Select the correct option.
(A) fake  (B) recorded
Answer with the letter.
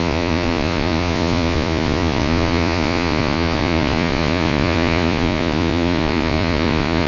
A